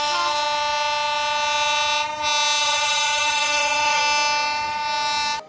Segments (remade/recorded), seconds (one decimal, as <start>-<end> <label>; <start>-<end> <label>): 0.0-2.6 recorded; 2.6-4.0 remade; 4.0-5.5 recorded